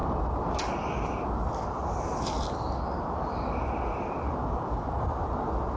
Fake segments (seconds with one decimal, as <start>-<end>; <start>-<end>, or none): none